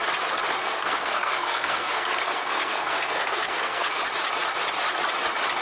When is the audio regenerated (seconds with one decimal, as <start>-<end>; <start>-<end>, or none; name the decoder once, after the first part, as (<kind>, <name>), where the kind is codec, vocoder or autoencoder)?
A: 0.6-4.0 (codec, SNAC)